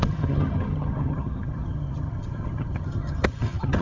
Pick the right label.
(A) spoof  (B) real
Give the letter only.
A